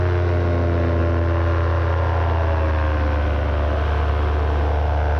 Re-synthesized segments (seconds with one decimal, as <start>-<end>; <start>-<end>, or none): none